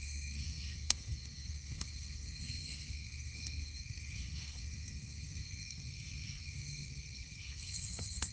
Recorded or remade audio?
remade